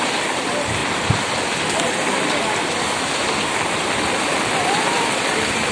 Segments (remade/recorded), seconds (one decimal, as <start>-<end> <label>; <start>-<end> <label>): 0.0-5.7 recorded

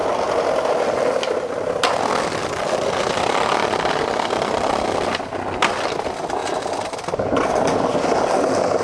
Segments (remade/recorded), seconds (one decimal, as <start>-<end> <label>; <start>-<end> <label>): 0.0-8.8 recorded